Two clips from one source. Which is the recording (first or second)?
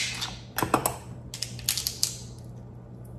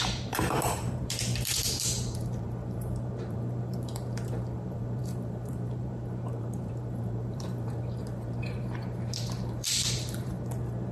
first